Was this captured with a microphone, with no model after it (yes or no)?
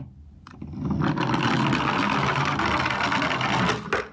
yes